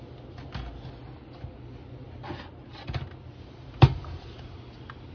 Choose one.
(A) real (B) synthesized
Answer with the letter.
A